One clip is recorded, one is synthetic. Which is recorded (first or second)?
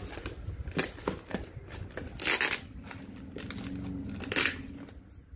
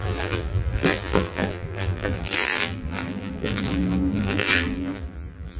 first